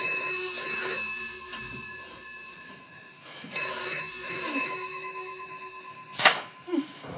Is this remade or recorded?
remade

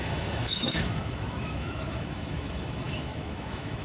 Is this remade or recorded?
remade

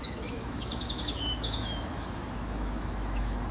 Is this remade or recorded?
remade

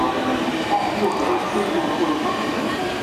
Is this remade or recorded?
recorded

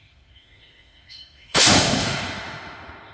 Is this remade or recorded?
remade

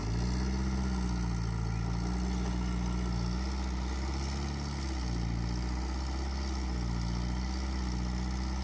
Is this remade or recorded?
recorded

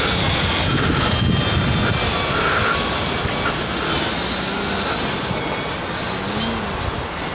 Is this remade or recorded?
recorded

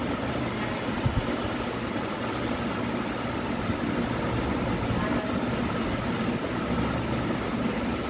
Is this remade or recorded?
recorded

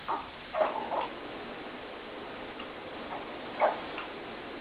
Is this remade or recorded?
recorded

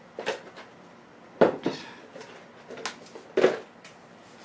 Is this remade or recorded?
recorded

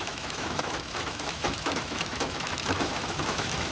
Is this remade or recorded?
remade